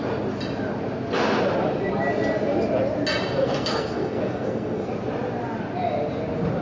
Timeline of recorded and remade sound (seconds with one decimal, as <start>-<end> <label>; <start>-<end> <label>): 0.0-3.4 recorded; 3.4-4.9 remade; 4.9-6.6 recorded